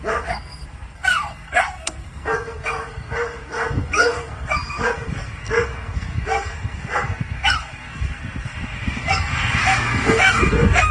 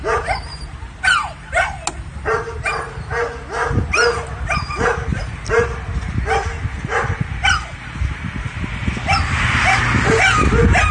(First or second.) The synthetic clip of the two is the first